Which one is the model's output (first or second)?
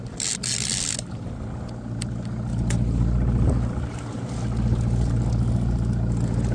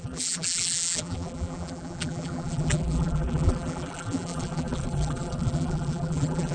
second